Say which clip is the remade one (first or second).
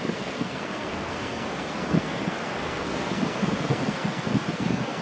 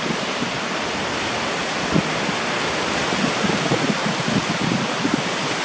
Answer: first